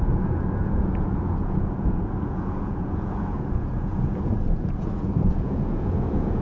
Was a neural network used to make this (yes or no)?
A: yes